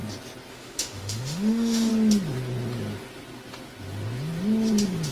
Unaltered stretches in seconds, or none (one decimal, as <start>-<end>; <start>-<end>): 0.0-0.5; 1.9-5.1